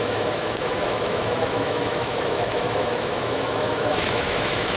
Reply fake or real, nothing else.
fake